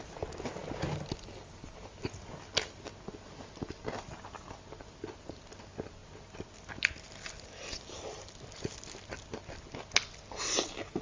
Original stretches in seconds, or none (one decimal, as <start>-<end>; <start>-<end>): 0.0-11.0